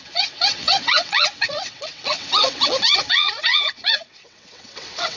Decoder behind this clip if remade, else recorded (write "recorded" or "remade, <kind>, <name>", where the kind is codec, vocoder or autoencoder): remade, vocoder, WaveNeXt